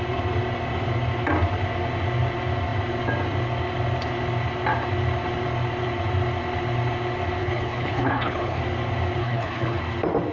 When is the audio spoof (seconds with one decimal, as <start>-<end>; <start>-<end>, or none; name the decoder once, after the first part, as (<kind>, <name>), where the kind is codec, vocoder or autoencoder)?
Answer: 7.4-8.6 (codec, HILCodec); 9.2-9.8